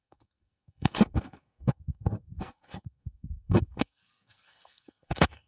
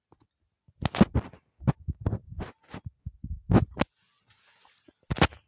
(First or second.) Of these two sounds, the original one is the second